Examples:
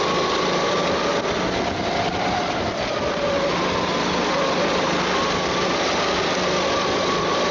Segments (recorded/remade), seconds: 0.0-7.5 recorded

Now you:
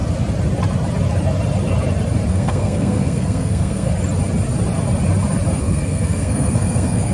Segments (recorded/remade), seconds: 0.0-2.3 recorded; 2.3-3.9 remade; 3.9-5.6 recorded; 5.6-7.1 remade

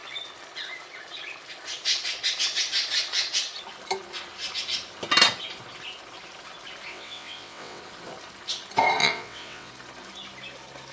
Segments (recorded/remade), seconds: 0.0-6.9 recorded; 6.9-7.8 remade; 7.8-9.0 recorded; 9.0-9.7 remade; 9.7-10.9 recorded

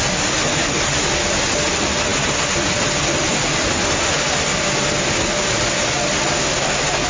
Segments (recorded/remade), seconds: 0.0-7.1 recorded

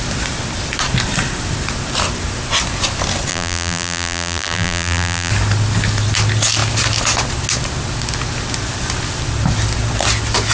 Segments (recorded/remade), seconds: 0.0-3.3 recorded; 3.3-5.3 remade; 5.3-10.5 recorded

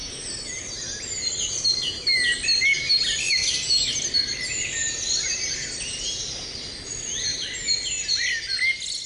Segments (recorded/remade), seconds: 0.0-9.1 recorded

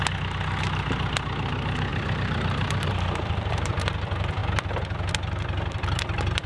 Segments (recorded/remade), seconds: 0.0-1.9 recorded; 1.9-3.7 remade; 3.7-6.5 recorded